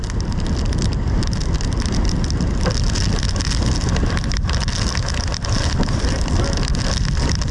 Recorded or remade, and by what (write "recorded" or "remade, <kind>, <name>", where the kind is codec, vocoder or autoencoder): recorded